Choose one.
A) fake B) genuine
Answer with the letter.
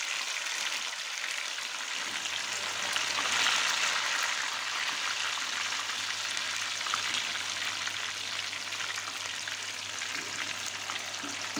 B